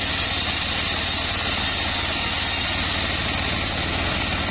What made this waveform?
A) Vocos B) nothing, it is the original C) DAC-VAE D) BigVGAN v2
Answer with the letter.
B